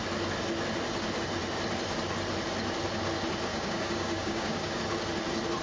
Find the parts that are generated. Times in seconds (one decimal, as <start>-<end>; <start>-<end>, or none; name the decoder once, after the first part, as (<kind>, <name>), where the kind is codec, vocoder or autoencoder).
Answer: 3.5-4.8 (codec, DAC)